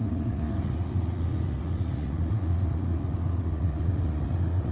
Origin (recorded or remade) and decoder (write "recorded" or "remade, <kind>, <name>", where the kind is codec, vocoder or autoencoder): remade, vocoder, Vocos